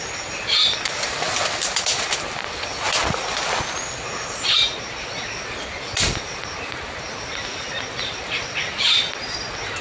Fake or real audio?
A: real